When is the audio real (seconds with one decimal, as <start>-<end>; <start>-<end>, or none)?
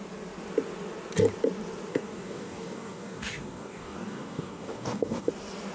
0.0-1.9; 5.3-5.7